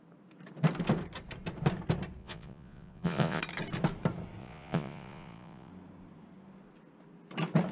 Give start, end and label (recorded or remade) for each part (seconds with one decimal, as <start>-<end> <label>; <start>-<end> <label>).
0.0-2.2 recorded; 2.2-3.4 remade; 3.4-4.4 recorded; 4.4-5.7 remade; 5.7-7.7 recorded